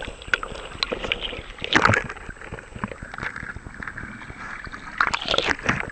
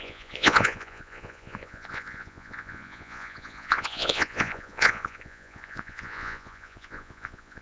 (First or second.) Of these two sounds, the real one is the first